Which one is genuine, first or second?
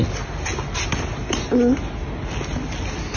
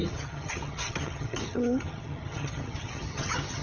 first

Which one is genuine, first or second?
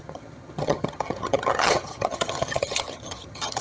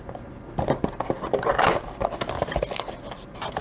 second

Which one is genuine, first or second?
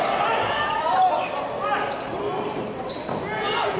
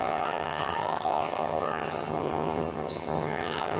first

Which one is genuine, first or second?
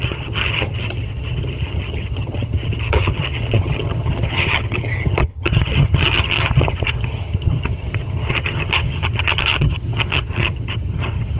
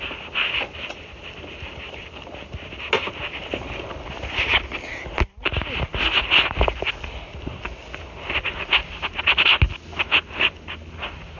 second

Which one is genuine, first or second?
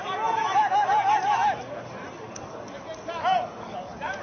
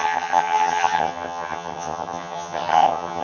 first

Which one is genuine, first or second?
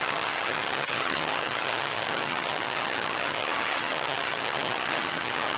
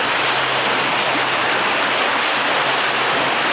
second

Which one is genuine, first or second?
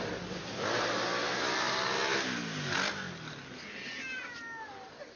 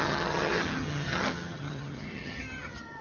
first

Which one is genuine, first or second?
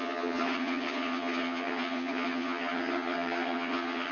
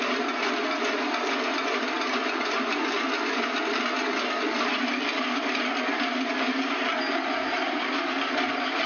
second